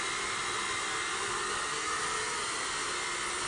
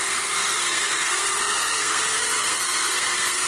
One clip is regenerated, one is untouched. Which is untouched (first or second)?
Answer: first